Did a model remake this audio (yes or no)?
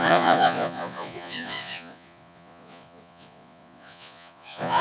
yes